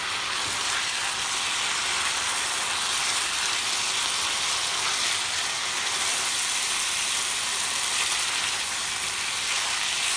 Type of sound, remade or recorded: recorded